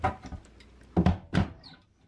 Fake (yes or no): no